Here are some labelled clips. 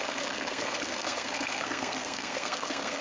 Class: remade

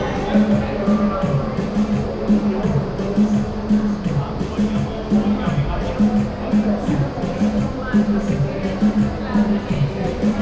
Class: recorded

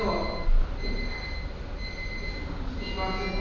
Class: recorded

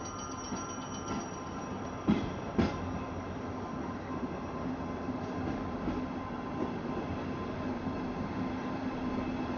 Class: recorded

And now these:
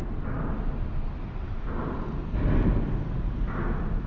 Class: recorded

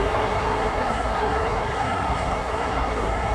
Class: remade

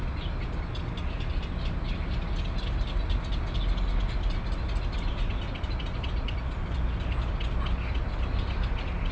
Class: recorded